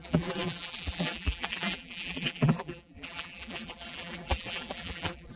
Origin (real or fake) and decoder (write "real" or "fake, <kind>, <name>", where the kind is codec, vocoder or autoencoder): fake, vocoder, BigVGAN v2